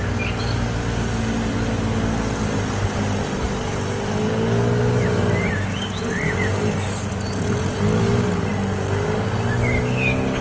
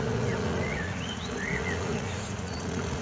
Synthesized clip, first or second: second